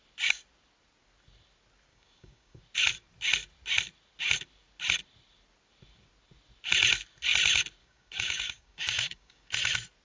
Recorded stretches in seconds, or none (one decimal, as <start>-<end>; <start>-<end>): 0.0-1.9; 2.6-7.8; 9.5-10.0